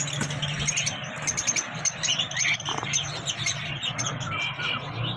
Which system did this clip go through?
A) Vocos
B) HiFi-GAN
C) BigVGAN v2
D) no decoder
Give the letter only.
D